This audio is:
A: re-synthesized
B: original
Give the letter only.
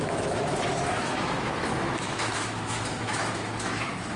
A